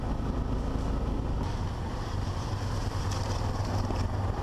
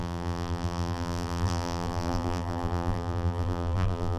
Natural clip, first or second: first